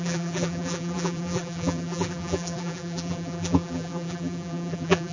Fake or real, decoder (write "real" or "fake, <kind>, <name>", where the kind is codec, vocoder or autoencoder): fake, vocoder, BigVGAN v2